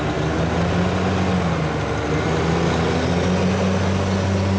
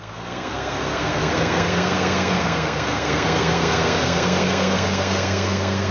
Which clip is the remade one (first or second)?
second